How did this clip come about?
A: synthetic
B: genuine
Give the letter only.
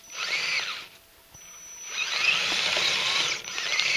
B